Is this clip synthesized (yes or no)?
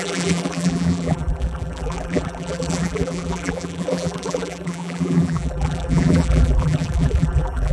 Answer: yes